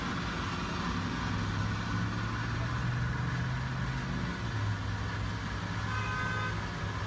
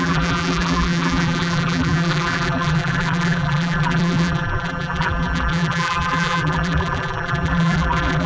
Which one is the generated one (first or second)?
second